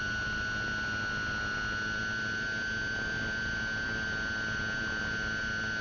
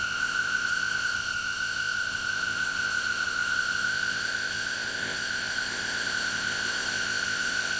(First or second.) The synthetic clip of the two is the second